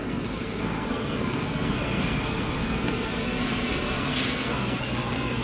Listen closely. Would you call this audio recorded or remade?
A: remade